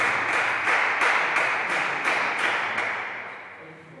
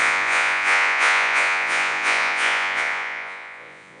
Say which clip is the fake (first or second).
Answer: second